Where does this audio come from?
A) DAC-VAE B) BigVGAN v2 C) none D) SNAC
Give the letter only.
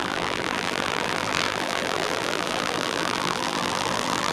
B